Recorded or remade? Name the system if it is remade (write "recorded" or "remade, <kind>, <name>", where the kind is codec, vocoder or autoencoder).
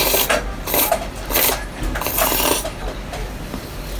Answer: recorded